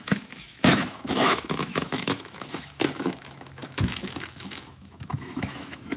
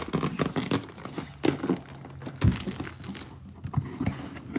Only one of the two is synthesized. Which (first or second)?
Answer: first